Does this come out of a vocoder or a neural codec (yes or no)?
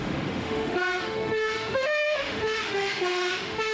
yes